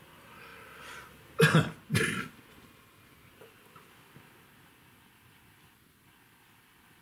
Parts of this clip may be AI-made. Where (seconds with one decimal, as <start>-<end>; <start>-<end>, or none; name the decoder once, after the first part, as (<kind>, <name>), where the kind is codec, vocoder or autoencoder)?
none